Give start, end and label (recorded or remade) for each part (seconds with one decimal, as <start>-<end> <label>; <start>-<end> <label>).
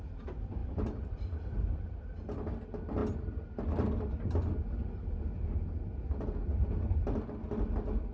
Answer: 0.0-0.6 recorded; 0.6-1.7 remade; 1.7-8.1 recorded